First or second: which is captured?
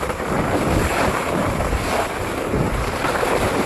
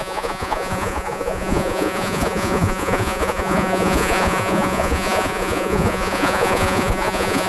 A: first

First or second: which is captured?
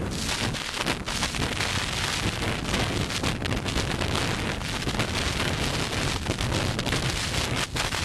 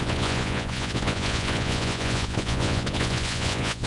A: first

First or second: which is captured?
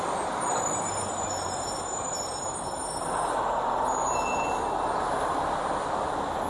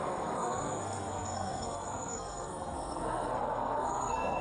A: first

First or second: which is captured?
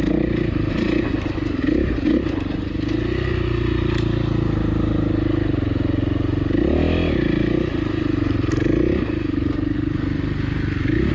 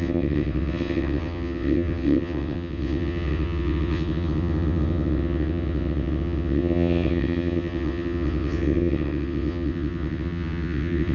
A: first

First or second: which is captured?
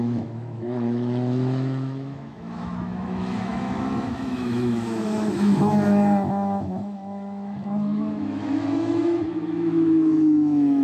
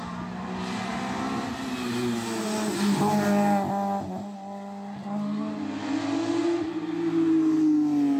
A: second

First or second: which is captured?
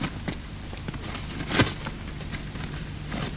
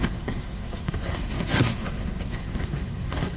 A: first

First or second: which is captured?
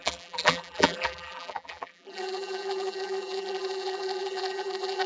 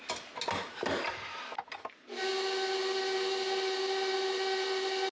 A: second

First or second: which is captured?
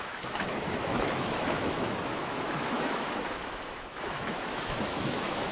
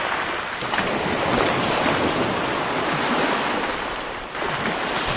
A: second